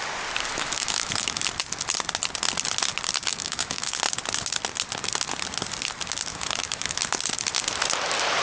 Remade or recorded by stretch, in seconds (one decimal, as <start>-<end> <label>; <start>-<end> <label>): 0.0-0.5 recorded; 0.5-1.4 remade; 1.4-3.3 recorded; 3.3-4.0 remade; 4.0-6.3 recorded; 6.3-7.0 remade; 7.0-8.4 recorded